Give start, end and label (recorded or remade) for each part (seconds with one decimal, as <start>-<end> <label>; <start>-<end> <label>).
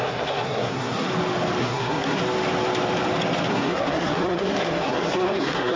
0.0-1.1 remade; 1.1-1.6 recorded; 1.6-2.2 remade; 2.2-3.5 recorded; 3.5-5.8 remade